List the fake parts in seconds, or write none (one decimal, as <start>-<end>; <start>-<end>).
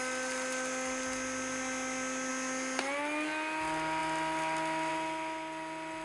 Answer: none